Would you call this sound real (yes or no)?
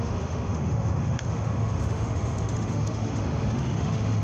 no